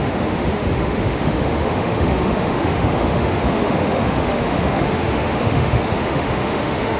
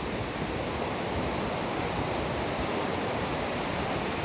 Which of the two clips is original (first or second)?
second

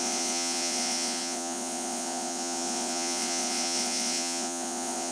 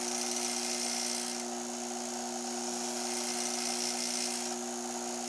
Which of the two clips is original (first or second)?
second